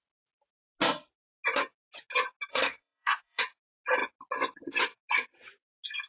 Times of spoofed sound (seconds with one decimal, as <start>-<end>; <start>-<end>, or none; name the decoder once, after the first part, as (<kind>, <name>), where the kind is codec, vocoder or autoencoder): 2.5-3.4 (codec, SNAC)